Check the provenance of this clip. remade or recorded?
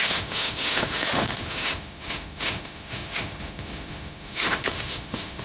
remade